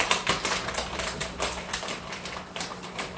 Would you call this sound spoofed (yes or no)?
yes